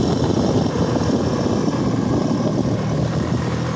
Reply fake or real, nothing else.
real